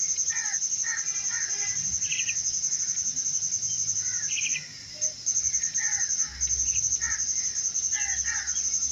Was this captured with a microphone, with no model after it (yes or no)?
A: yes